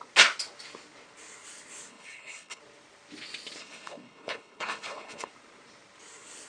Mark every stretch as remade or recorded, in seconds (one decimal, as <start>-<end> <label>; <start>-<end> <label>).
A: 0.0-1.9 recorded; 1.9-2.6 remade; 2.6-3.6 recorded; 3.6-5.3 remade; 5.3-6.5 recorded